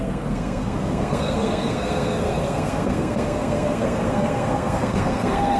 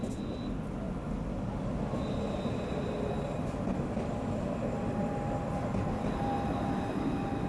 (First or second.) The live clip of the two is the second